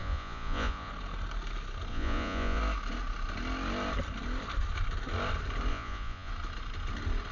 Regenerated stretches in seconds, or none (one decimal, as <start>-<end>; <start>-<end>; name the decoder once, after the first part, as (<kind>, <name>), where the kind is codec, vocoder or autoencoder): 0.0-0.9 (vocoder, Vocos); 1.9-2.6; 5.7-6.3